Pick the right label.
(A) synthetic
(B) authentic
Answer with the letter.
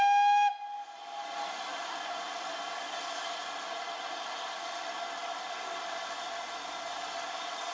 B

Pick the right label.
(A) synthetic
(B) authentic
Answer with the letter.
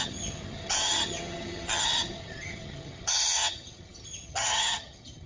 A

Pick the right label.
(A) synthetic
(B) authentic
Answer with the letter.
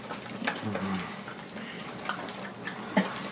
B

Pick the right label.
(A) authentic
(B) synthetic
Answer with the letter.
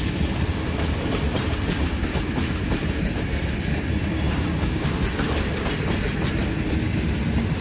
A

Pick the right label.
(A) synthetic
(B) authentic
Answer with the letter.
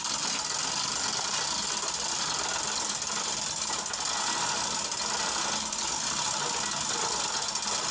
B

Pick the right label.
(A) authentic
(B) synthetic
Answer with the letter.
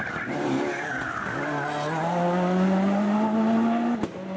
A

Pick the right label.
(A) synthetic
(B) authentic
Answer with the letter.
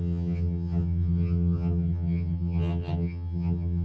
A